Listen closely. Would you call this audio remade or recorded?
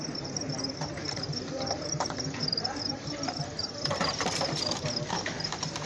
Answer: remade